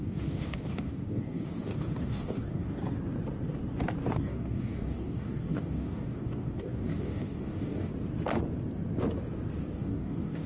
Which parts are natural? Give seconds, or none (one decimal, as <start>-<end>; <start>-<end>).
2.8-4.2; 7.9-9.6